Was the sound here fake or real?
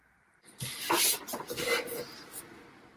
real